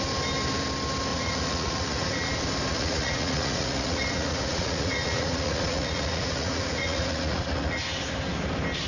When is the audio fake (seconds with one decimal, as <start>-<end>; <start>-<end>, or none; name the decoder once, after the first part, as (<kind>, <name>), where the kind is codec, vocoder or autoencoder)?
1.1-2.3 (vocoder, Vocos); 2.7-7.8